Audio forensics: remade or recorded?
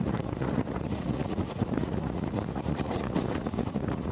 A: remade